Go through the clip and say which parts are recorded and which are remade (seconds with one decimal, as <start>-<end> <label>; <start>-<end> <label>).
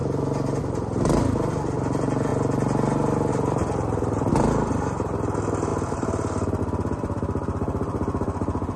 0.0-0.6 recorded; 0.6-2.3 remade; 2.3-3.3 recorded; 3.3-8.8 remade